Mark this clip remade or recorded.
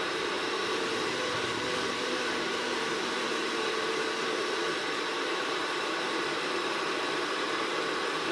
remade